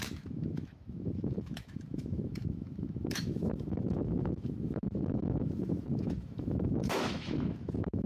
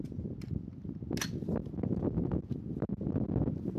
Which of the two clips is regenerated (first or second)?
first